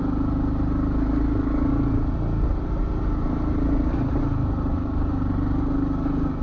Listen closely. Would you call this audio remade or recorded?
recorded